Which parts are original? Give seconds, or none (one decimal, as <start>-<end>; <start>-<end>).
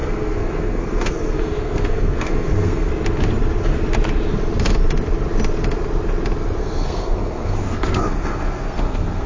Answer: 2.9-6.6